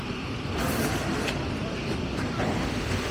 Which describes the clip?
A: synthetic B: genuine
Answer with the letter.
B